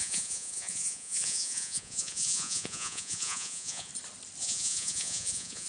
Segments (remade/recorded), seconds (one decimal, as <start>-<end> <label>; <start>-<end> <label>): 0.0-3.9 remade; 3.9-4.4 recorded; 4.4-5.7 remade